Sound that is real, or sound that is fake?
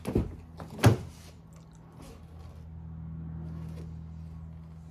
real